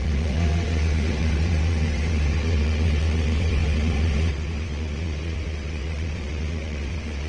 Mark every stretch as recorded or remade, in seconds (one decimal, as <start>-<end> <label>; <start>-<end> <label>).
0.0-7.3 remade